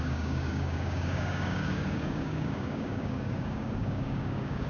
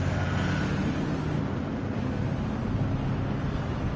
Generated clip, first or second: first